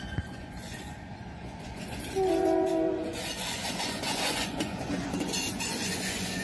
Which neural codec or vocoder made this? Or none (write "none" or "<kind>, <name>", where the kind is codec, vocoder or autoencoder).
vocoder, Vocos